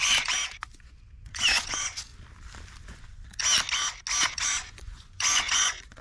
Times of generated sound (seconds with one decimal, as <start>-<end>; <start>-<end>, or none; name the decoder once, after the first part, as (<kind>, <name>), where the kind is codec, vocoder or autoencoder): 0.0-2.1 (vocoder, Vocos); 2.8-3.4; 4.2-6.0